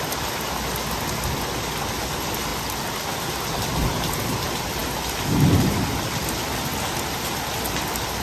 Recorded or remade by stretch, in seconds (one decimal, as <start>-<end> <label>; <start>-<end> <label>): 0.0-8.2 recorded